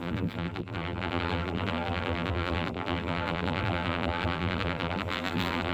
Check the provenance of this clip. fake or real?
fake